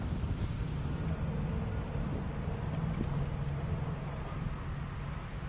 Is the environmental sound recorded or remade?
recorded